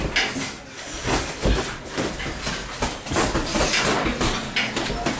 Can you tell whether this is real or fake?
real